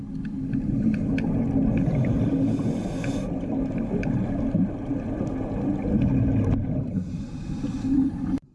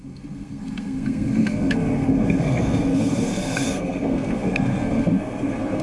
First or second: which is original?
first